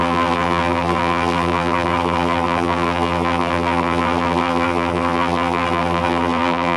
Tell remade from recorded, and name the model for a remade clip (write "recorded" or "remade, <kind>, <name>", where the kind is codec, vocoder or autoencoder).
remade, vocoder, BigVGAN v2